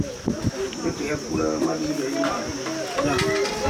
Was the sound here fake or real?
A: real